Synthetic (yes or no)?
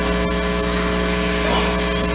no